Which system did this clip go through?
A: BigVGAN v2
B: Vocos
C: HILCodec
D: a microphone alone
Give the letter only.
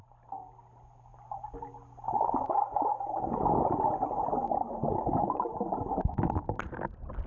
D